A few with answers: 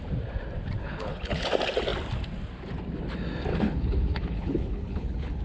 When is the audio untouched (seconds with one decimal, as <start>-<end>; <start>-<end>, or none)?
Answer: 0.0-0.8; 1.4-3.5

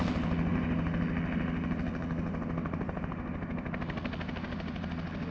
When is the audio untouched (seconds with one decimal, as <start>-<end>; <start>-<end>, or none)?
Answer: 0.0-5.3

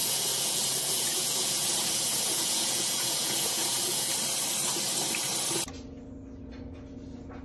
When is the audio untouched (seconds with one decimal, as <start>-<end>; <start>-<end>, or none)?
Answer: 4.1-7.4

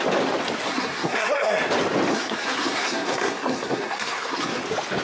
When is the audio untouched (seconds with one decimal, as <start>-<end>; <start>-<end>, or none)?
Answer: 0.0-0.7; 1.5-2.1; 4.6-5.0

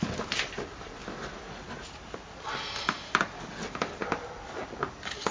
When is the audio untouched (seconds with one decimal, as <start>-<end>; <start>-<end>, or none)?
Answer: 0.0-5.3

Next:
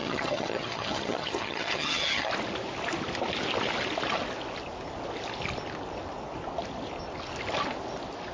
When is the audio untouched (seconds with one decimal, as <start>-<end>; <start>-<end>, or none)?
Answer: 2.3-8.3